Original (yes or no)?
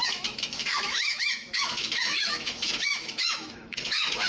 no